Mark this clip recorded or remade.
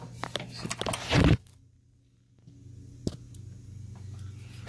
recorded